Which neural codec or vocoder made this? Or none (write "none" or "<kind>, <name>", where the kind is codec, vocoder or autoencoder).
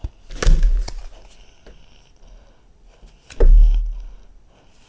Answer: none